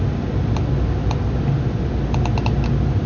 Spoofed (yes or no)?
no